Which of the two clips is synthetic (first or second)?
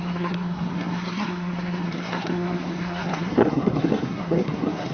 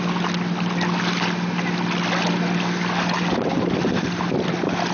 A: first